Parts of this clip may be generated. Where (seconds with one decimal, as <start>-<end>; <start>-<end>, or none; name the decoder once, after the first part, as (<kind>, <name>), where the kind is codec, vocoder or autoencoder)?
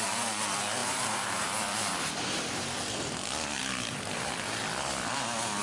0.8-2.8 (vocoder, BigVGAN v2); 3.6-4.6